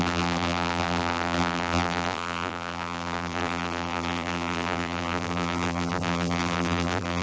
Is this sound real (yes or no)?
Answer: no